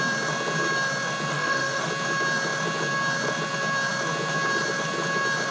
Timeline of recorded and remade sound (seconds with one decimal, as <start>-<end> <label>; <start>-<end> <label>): 0.0-1.3 recorded; 1.3-1.9 remade; 1.9-5.5 recorded